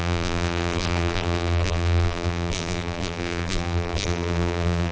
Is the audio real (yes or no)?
no